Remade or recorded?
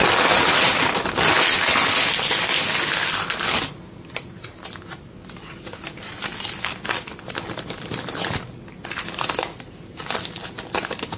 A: recorded